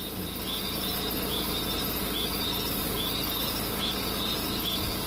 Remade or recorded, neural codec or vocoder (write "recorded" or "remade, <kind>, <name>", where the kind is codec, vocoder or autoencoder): recorded